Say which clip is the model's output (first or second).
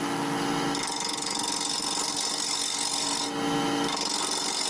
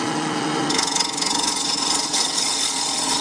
second